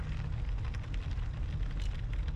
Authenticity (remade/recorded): recorded